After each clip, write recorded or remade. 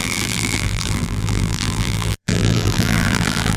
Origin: remade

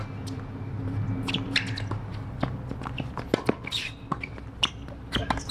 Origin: recorded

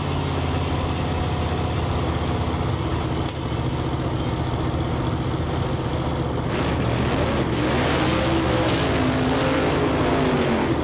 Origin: recorded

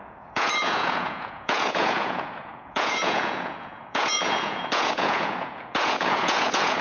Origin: remade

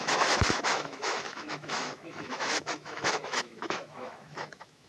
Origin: remade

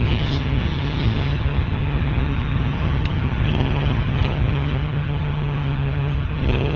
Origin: remade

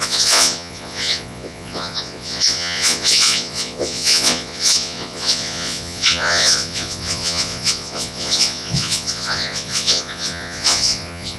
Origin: remade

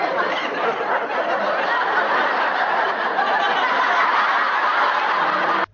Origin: recorded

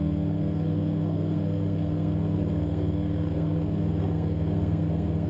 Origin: remade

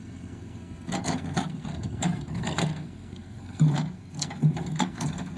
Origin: remade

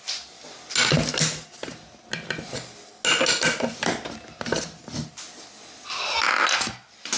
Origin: recorded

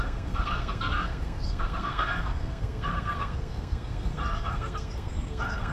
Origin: remade